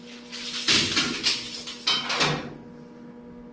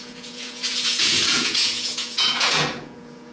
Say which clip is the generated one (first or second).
second